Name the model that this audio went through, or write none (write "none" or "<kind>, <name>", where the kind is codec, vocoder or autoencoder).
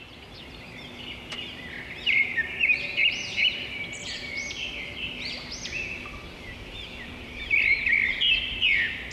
vocoder, BigVGAN v2